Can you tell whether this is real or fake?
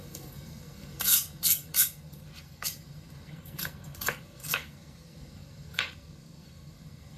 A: fake